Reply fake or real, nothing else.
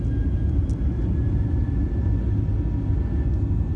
real